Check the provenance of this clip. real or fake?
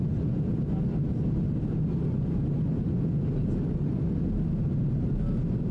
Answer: real